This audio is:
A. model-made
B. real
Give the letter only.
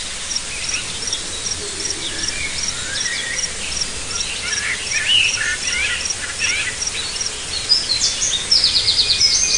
B